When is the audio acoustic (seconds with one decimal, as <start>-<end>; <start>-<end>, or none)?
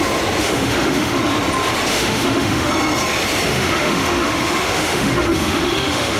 0.0-0.4; 1.2-1.9; 2.7-3.5